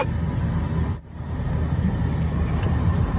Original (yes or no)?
yes